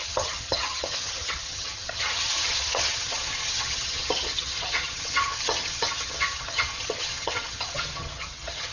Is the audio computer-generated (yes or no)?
yes